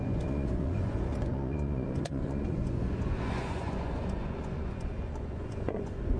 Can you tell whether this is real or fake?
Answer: fake